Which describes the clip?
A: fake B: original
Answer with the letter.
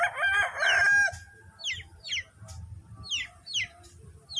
B